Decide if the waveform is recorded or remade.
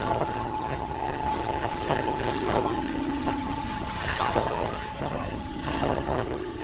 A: remade